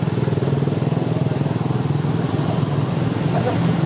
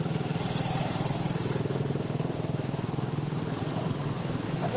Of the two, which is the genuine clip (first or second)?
first